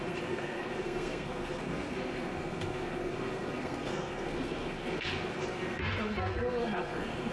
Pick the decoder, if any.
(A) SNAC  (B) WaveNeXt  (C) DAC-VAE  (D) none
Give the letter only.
A